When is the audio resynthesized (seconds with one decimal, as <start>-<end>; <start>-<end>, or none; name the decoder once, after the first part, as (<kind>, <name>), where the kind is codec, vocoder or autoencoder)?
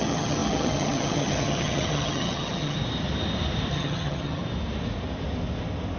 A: 0.0-2.8 (vocoder, HiFi-GAN); 3.7-4.4